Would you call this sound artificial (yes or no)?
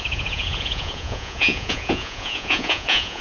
yes